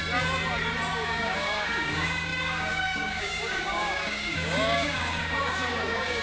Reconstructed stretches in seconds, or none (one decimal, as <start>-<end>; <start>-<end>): 0.9-6.2